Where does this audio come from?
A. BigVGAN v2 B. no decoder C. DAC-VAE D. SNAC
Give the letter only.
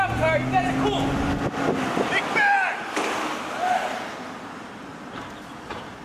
B